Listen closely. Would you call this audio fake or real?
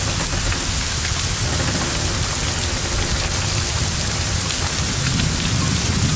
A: real